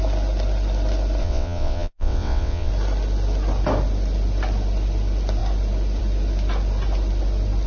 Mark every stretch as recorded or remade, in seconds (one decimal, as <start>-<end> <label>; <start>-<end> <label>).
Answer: 0.0-1.2 recorded; 1.2-2.7 remade; 2.7-7.7 recorded